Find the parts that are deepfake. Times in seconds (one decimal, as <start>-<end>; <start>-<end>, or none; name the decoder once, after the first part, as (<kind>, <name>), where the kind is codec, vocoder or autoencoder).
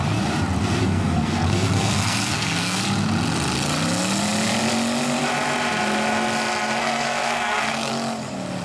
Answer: 0.8-2.8 (codec, SNAC); 6.8-7.9